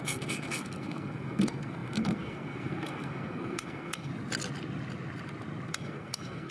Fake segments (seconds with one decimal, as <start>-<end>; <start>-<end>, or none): 0.0-4.1; 5.7-6.5